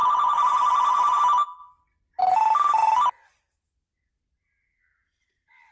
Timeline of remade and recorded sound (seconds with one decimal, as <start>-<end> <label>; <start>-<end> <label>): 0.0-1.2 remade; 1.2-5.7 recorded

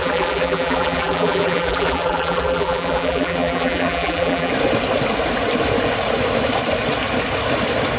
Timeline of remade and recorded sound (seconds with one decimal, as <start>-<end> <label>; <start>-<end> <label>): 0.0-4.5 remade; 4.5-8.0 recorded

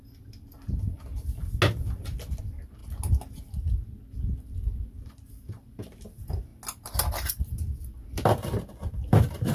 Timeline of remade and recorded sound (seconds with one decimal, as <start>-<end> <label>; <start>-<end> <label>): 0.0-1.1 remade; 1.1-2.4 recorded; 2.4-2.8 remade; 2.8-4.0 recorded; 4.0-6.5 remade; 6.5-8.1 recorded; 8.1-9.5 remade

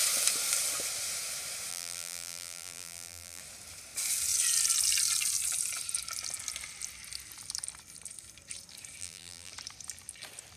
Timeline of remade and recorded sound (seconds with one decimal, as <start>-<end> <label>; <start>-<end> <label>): 0.0-1.7 recorded; 1.7-3.4 remade; 3.4-9.0 recorded; 9.0-9.5 remade; 9.5-10.6 recorded

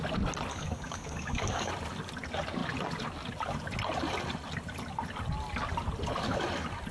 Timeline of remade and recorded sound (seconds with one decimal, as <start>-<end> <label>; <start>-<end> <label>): 0.0-0.5 recorded; 0.5-1.7 remade; 1.7-6.9 recorded

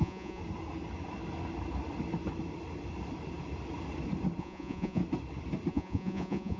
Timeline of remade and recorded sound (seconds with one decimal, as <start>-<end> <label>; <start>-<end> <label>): 0.0-0.4 remade; 0.4-4.4 recorded; 4.4-5.0 remade; 5.0-5.7 recorded; 5.7-6.6 remade

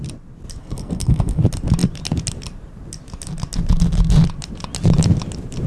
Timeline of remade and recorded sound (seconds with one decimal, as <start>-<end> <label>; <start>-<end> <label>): 0.0-0.6 recorded; 0.6-1.4 remade; 1.4-5.7 recorded